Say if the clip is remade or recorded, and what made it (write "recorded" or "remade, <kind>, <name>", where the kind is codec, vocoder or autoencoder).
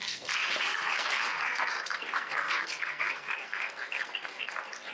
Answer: remade, codec, SNAC